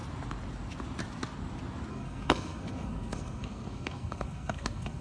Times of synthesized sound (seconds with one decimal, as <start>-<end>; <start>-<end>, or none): 1.9-5.0